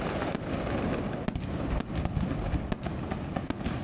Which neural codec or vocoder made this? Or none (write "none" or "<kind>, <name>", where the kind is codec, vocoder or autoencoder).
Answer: none